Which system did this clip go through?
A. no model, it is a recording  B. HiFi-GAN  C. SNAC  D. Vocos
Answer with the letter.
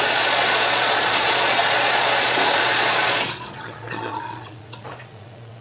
D